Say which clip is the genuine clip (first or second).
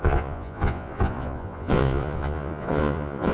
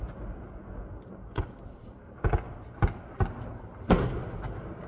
second